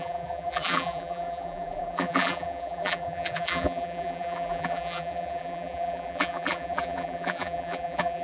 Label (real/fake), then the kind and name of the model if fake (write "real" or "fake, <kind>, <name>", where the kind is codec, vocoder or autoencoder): fake, vocoder, BigVGAN v2